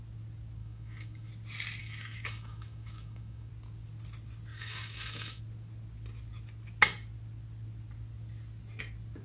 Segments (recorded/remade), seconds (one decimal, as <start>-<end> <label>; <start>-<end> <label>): 0.0-0.6 recorded; 0.6-1.3 remade; 1.3-1.8 recorded; 1.8-3.5 remade; 3.5-4.5 recorded; 4.5-5.4 remade; 5.4-9.2 recorded